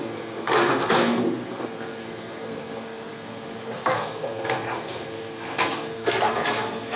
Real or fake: fake